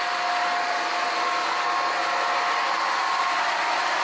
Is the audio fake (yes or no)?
no